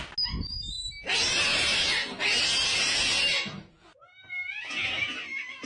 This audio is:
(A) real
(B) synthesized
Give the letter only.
A